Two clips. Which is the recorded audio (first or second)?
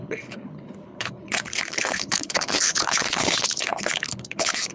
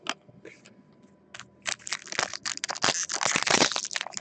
second